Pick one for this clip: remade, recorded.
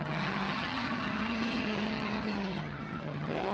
remade